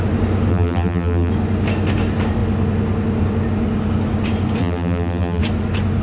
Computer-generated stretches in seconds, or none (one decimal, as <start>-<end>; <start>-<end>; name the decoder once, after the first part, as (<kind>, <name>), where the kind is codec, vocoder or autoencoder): 0.5-1.3 (vocoder, BigVGAN v2); 4.6-5.4